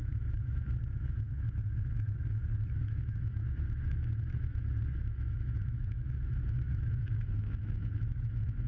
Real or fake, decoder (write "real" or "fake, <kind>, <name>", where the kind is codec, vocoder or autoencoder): fake, autoencoder, DAC-VAE